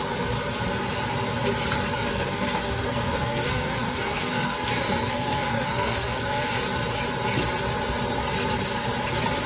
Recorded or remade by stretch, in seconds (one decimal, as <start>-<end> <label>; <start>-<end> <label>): 0.0-1.9 recorded; 1.9-6.6 remade; 6.6-9.5 recorded